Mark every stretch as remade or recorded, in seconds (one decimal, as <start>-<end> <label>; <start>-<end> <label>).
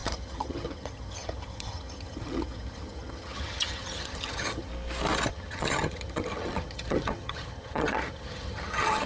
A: 0.0-4.7 remade; 4.7-5.3 recorded; 5.3-9.1 remade